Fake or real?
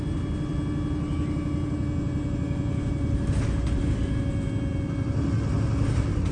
real